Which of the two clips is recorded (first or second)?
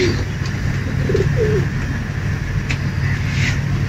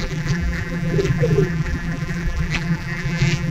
first